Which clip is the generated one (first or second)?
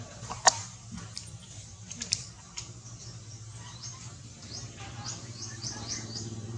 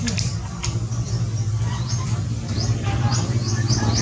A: first